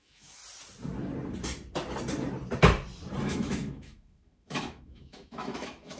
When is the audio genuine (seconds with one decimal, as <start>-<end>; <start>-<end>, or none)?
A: 0.4-3.2